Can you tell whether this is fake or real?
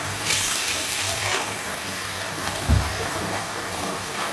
fake